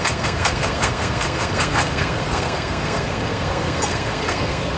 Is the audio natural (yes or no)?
no